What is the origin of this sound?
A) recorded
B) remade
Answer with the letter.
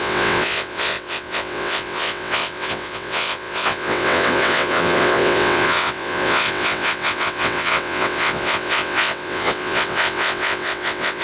B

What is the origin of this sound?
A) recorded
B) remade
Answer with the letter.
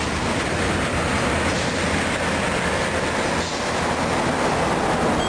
A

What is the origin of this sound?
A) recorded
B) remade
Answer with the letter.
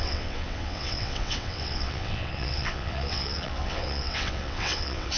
B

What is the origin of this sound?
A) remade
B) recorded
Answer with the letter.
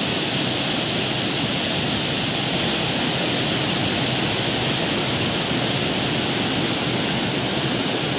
B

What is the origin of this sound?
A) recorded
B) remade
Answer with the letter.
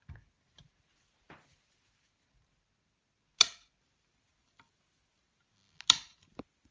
A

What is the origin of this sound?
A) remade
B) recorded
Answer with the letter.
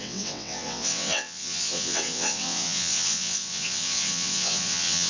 A